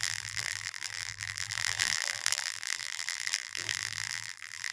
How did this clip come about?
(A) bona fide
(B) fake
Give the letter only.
B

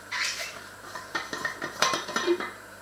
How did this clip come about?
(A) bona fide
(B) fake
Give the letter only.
B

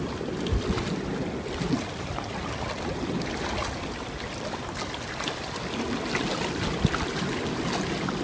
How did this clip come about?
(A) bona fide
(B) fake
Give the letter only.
A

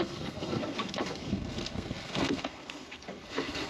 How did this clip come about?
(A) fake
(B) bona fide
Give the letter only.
A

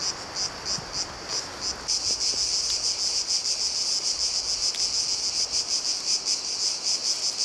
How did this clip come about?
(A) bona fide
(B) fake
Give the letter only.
A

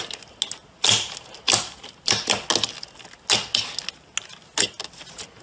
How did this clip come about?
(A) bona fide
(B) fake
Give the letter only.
A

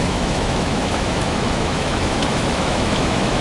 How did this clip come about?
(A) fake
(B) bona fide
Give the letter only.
A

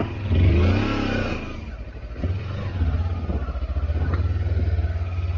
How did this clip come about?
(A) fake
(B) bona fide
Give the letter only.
B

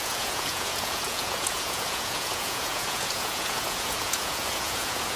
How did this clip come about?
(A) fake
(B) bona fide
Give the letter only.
A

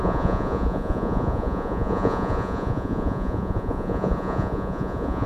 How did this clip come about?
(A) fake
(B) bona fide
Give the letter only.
A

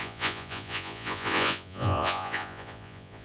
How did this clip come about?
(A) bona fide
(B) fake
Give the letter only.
B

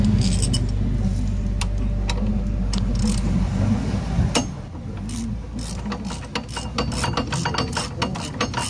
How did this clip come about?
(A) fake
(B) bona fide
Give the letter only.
B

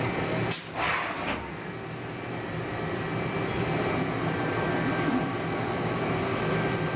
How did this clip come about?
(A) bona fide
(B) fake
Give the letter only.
A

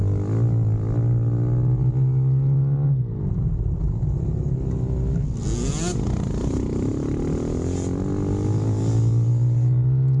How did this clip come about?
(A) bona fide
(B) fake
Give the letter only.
A